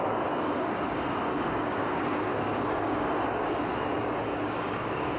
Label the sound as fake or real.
fake